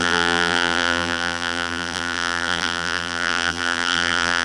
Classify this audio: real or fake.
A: fake